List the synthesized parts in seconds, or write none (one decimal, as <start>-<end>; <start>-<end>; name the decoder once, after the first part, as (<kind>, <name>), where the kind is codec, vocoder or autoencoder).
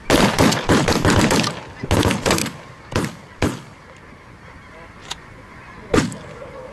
5.0-6.0 (vocoder, Vocos)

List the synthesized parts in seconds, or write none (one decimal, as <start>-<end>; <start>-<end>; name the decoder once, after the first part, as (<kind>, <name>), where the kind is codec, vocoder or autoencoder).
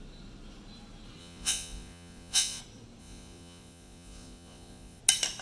1.2-2.6 (vocoder, Vocos); 3.0-5.0